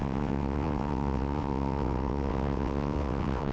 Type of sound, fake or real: fake